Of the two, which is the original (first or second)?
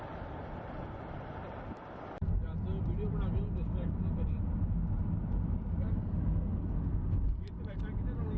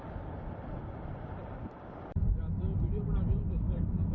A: first